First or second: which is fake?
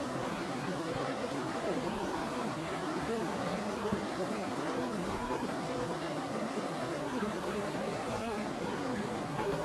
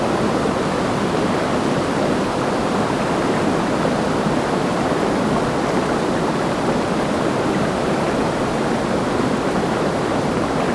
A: first